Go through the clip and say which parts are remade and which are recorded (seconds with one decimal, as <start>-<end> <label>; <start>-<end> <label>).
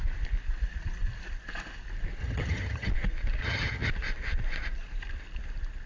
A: 0.0-2.2 recorded; 2.2-2.9 remade; 2.9-3.4 recorded; 3.4-3.9 remade; 3.9-5.9 recorded